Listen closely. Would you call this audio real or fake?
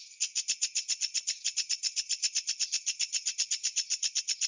real